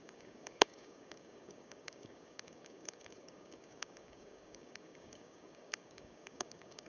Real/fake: fake